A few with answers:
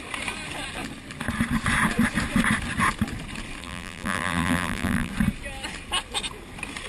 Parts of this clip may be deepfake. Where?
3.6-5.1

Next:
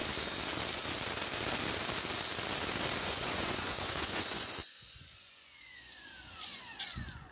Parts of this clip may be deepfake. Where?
3.0-7.3

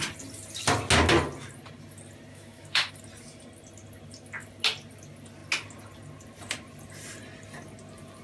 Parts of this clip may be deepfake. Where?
2.3-2.9